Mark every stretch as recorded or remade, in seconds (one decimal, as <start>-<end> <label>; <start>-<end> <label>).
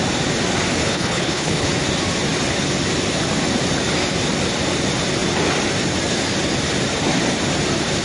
0.0-0.8 recorded; 0.8-1.7 remade; 1.7-8.0 recorded